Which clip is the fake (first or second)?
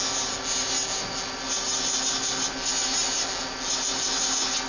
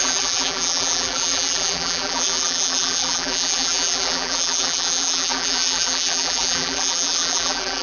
second